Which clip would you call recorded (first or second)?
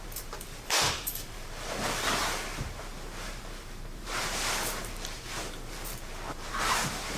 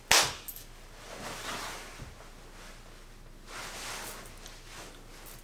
second